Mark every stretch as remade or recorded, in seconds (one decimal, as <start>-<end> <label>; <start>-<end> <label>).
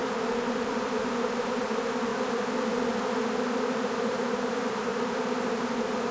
0.0-2.1 remade; 2.1-4.0 recorded; 4.0-4.9 remade; 4.9-5.4 recorded; 5.4-6.1 remade